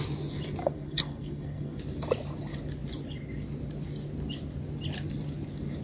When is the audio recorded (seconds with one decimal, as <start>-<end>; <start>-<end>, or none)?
0.0-0.6; 1.8-5.8